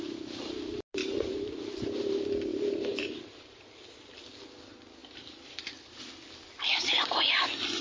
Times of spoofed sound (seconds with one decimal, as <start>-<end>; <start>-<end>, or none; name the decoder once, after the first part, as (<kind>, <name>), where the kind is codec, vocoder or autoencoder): 1.0-1.6 (vocoder, BigVGAN v2); 2.5-4.2; 5.0-5.7